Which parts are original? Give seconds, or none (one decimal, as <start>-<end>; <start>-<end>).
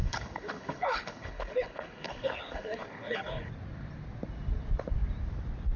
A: 3.5-5.8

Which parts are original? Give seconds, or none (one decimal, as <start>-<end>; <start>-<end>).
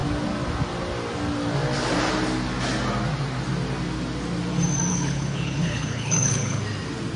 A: 0.0-4.9; 6.6-7.2